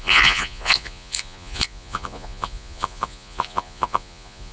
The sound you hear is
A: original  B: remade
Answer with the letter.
B